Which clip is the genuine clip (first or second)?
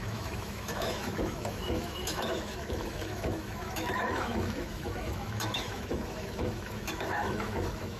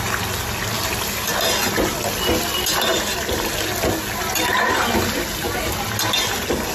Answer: second